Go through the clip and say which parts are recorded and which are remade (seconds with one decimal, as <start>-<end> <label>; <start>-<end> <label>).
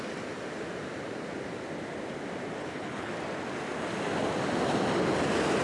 0.0-2.6 recorded; 2.6-3.1 remade; 3.1-5.6 recorded